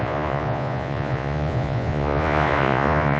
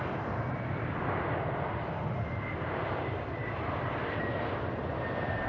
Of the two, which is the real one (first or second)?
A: second